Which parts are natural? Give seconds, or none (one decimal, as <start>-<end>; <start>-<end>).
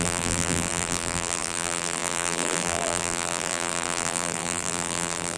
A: none